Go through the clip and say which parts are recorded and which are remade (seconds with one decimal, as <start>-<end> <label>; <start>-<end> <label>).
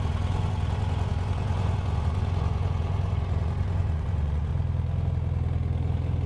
0.0-4.5 remade; 4.5-6.3 recorded